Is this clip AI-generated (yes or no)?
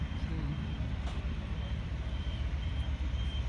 yes